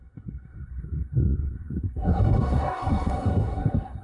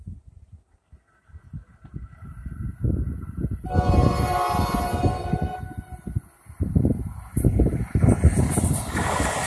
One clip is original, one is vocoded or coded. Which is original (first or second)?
second